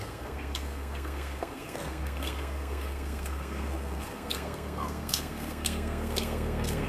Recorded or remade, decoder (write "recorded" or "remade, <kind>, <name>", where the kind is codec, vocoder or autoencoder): remade, codec, SNAC